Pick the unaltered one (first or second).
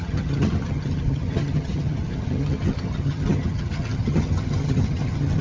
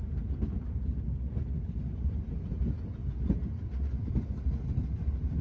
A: second